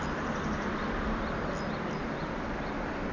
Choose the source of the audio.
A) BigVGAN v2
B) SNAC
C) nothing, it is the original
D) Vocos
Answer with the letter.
C